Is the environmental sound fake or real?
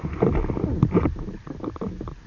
real